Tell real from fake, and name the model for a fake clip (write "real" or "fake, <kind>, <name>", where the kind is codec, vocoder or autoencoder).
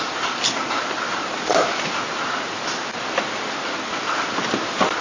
real